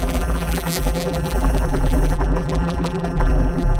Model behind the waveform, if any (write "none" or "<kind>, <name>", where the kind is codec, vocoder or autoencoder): vocoder, BigVGAN v2